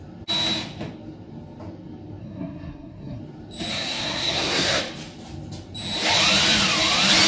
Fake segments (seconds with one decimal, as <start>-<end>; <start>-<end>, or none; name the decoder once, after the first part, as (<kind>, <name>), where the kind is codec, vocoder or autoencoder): 2.2-3.2 (codec, SNAC); 3.7-4.8